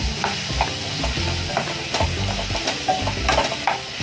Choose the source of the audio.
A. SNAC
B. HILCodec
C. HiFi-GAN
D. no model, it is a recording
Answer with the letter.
D